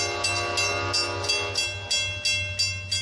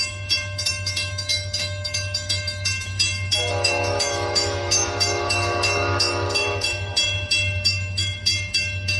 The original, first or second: first